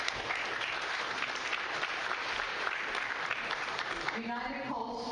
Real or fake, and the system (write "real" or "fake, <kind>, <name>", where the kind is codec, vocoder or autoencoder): fake, vocoder, BigVGAN v2